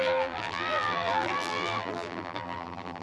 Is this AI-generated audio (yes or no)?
yes